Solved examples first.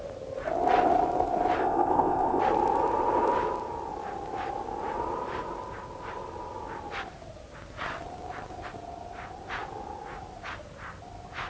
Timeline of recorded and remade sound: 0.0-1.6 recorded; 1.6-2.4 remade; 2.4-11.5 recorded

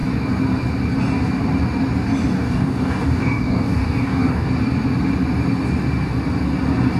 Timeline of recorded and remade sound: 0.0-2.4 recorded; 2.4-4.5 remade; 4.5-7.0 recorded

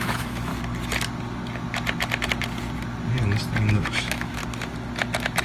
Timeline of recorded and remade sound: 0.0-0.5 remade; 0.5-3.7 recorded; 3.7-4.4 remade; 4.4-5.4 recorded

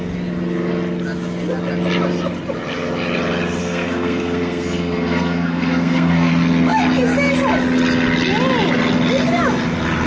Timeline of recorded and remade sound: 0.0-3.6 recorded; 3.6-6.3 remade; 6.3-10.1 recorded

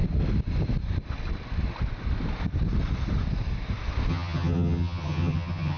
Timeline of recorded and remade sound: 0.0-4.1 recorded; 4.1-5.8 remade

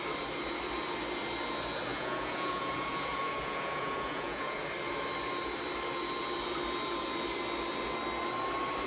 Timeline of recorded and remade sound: 0.0-1.9 recorded; 1.9-4.6 remade; 4.6-8.9 recorded